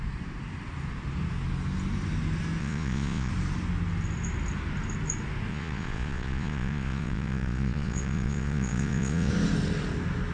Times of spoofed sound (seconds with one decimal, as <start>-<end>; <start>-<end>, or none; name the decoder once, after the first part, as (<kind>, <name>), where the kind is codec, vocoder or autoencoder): 2.6-3.3 (vocoder, Vocos); 5.5-9.3